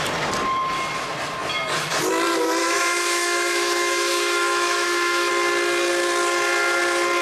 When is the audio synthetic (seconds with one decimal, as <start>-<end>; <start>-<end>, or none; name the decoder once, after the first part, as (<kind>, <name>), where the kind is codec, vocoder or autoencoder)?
2.6-5.3 (autoencoder, DAC-VAE)